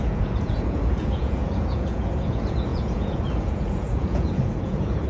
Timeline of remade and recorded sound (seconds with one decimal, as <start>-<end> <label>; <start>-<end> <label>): 0.0-5.1 remade